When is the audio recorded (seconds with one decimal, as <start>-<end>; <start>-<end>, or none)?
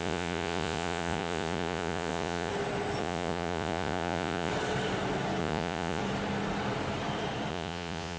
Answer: 2.5-3.0; 4.5-5.4; 6.0-7.5